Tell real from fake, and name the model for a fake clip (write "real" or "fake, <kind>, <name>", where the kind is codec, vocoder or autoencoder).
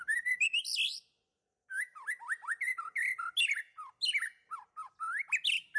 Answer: real